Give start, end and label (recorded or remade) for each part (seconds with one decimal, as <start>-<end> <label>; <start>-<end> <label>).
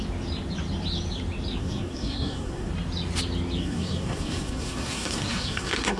0.0-1.6 recorded; 1.6-2.7 remade; 2.7-3.6 recorded; 3.6-6.0 remade